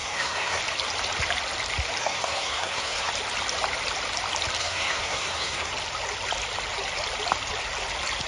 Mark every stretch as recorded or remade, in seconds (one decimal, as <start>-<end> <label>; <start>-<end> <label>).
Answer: 0.0-0.6 remade; 0.6-2.0 recorded; 2.0-3.1 remade; 3.1-4.6 recorded; 4.6-5.7 remade; 5.7-8.3 recorded